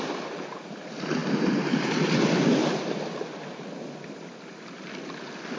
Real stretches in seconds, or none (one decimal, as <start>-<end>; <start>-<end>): 0.0-5.6